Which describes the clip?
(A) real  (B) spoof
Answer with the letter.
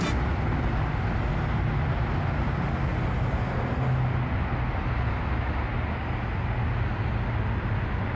A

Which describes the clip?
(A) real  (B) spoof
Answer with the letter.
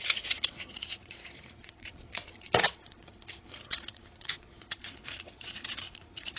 B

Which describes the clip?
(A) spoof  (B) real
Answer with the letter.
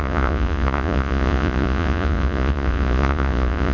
A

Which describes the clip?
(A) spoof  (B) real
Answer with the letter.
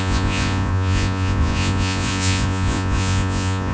A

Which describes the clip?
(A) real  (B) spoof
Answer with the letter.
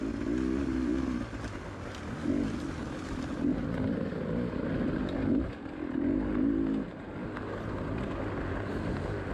A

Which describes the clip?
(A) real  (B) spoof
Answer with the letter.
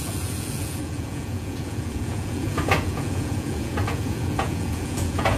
B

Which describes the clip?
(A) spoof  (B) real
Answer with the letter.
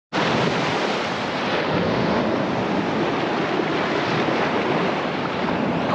B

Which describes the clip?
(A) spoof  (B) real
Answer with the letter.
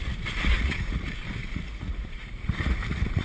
A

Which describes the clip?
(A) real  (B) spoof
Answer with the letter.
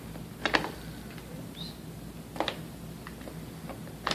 A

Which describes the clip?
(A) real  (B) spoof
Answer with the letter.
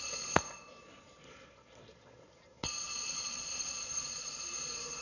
B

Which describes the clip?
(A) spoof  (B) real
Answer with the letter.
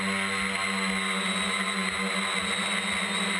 B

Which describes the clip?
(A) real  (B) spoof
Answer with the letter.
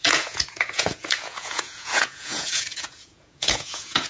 B